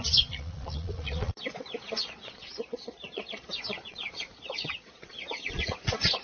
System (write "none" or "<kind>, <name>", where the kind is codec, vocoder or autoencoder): vocoder, Vocos